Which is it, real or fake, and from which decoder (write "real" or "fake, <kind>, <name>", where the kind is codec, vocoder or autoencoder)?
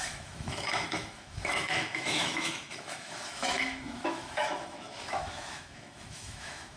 fake, autoencoder, DAC-VAE